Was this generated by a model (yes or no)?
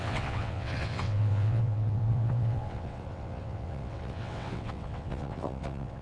yes